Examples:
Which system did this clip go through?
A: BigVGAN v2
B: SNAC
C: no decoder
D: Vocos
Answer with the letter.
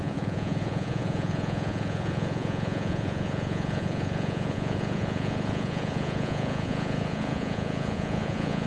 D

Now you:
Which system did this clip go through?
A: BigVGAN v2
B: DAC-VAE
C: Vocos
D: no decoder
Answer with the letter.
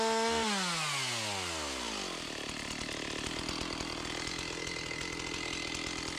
D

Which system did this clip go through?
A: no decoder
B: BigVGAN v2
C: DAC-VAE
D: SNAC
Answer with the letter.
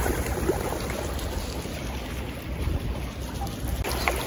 A